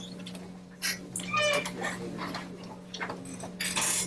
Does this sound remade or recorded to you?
recorded